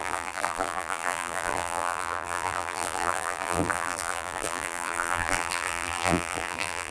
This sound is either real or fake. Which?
fake